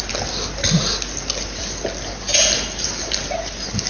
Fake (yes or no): no